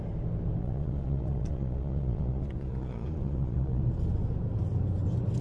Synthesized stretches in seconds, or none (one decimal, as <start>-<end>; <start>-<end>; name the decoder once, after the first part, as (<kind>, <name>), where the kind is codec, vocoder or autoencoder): 0.6-3.8 (vocoder, Vocos)